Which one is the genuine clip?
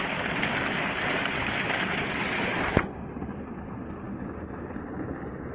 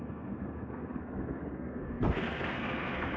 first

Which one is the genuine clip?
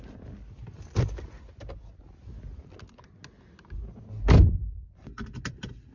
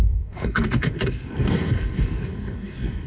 first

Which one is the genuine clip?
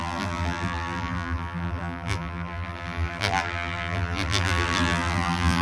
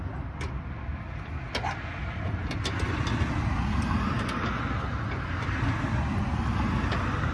second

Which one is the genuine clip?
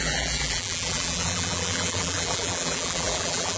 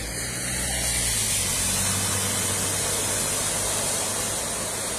second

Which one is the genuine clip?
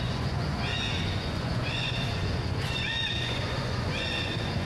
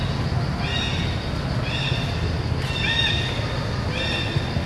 second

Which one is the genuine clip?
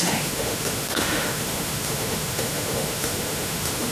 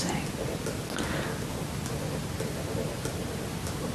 second